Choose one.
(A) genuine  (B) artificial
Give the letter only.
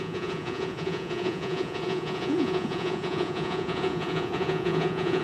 B